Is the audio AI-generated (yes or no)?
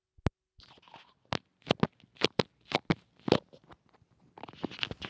no